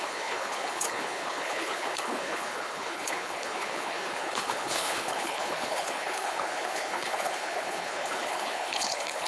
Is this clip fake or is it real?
fake